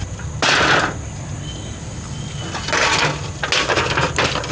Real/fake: real